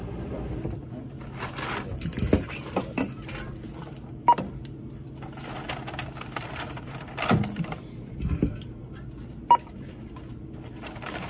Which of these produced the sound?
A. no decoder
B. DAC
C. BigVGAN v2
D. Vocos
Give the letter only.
A